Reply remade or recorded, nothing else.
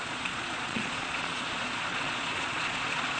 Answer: remade